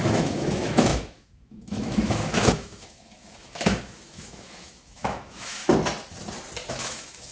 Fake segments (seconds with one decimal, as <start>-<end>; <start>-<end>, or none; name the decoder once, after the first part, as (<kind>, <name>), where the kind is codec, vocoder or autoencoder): 0.0-5.6 (autoencoder, DAC-VAE); 6.7-7.3

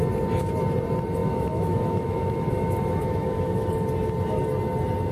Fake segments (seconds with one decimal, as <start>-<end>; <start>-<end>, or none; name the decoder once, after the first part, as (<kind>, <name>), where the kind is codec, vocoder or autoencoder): 1.2-3.7 (autoencoder, DAC-VAE)

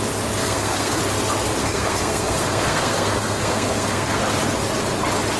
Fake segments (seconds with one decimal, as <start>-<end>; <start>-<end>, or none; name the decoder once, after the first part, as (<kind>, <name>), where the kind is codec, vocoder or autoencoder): 0.4-1.0 (codec, SNAC); 1.6-4.2